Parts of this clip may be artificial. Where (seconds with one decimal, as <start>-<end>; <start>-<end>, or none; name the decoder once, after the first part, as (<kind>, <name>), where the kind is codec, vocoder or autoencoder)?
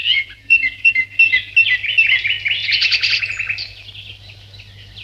0.0-0.9 (vocoder, Vocos); 2.6-3.3